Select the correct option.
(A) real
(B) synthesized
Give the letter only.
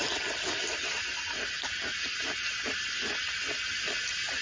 A